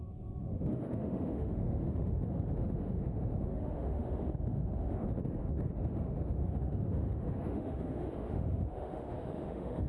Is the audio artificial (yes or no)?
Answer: yes